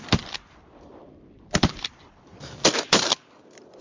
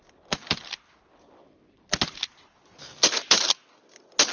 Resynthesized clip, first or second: first